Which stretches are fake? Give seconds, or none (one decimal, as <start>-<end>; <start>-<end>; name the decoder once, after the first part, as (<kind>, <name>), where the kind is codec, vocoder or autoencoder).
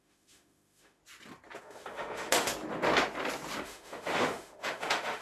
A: 0.0-1.0 (autoencoder, DAC-VAE); 1.6-2.5; 3.6-5.2